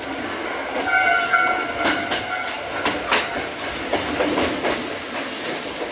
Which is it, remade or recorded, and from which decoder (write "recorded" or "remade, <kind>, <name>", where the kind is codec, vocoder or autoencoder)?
recorded